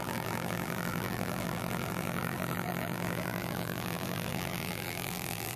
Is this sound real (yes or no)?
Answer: no